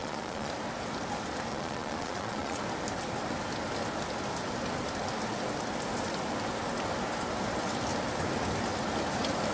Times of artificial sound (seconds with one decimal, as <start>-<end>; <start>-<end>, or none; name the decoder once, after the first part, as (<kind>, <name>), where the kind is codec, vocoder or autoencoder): 0.0-0.5 (vocoder, Vocos); 1.5-2.6